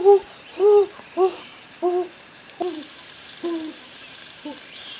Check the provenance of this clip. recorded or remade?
remade